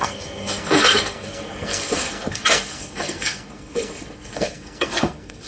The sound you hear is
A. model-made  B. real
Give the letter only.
A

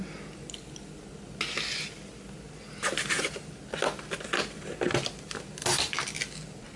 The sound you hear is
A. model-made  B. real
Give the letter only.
B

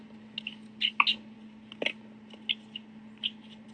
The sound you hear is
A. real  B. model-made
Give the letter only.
A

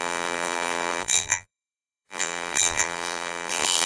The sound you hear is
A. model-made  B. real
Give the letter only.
A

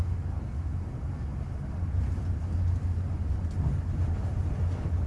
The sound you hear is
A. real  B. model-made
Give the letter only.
A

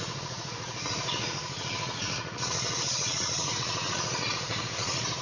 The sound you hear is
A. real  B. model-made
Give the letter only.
B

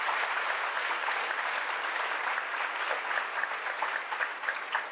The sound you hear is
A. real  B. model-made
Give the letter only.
A